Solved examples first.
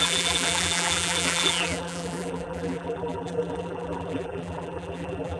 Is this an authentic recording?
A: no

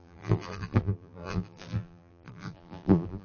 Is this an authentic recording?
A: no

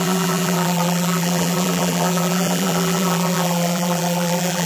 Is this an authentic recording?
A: no